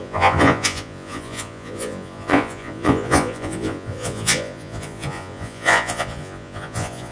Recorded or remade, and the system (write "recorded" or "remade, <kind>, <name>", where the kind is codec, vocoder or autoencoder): remade, vocoder, Vocos